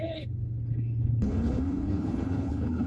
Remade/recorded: remade